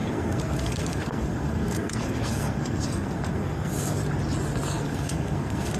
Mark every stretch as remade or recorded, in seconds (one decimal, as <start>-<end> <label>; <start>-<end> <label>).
0.0-4.0 remade; 4.0-4.7 recorded; 4.7-5.8 remade